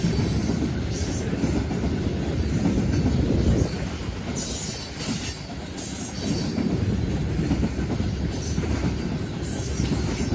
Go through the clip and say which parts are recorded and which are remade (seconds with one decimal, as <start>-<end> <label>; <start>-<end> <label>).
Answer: 0.0-0.4 recorded; 0.4-1.2 remade; 1.2-10.3 recorded

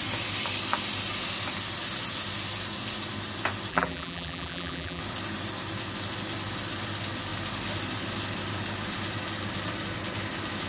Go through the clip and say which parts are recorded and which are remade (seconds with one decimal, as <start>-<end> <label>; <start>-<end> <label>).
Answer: 0.0-3.7 recorded; 3.7-5.0 remade; 5.0-10.7 recorded